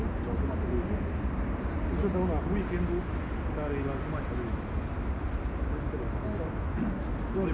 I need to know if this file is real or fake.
real